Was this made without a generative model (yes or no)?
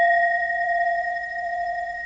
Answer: no